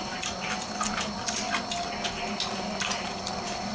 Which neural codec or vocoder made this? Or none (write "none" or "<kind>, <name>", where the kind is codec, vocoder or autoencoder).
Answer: none